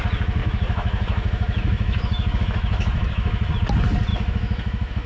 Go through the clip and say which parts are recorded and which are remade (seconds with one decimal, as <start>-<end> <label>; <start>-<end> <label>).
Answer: 0.0-0.4 recorded; 0.4-3.5 remade; 3.5-4.1 recorded; 4.1-5.1 remade

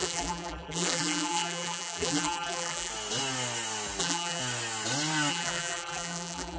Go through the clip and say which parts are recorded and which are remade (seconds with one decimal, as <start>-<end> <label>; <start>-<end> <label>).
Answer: 0.0-2.9 remade; 2.9-4.0 recorded; 4.0-4.4 remade; 4.4-5.3 recorded; 5.3-6.6 remade

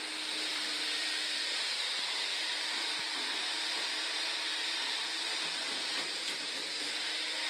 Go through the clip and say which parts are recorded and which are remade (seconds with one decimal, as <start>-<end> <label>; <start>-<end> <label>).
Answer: 0.0-0.5 recorded; 0.5-1.4 remade; 1.4-7.5 recorded

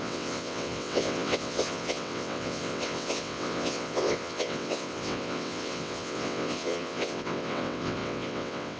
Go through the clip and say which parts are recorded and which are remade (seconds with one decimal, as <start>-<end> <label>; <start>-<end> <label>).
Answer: 0.0-8.8 remade

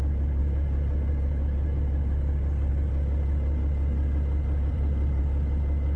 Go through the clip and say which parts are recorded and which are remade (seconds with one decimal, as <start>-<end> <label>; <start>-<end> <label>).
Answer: 0.0-4.7 recorded; 4.7-5.2 remade; 5.2-6.0 recorded

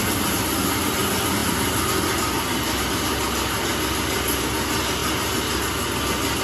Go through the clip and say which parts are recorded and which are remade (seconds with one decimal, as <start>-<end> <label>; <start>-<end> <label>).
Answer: 0.0-6.4 recorded

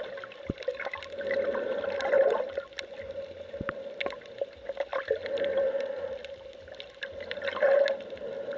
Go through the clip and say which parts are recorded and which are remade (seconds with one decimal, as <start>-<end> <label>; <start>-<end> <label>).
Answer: 0.0-4.9 recorded; 4.9-6.1 remade; 6.1-8.6 recorded